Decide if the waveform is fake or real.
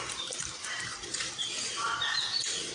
fake